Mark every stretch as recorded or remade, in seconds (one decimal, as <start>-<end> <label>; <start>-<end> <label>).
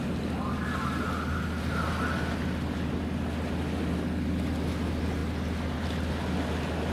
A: 0.0-6.9 recorded